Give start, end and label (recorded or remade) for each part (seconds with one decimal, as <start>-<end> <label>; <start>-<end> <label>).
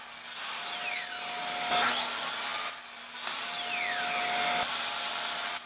0.0-5.7 recorded